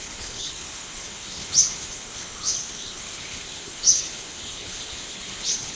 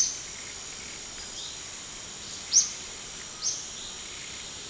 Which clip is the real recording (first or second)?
second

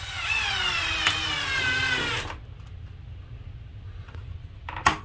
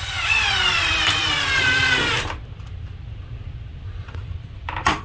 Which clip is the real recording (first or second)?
first